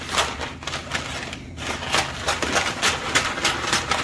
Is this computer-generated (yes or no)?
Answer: no